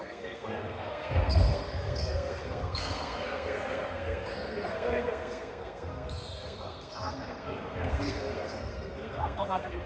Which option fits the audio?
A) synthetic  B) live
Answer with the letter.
A